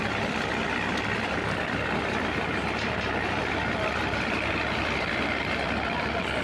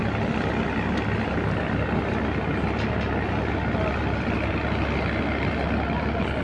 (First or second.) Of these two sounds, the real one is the second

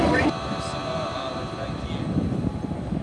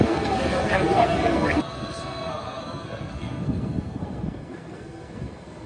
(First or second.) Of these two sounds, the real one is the first